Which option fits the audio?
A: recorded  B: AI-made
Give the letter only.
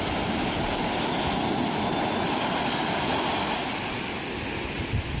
A